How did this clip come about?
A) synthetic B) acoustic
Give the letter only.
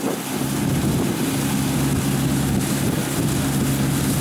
B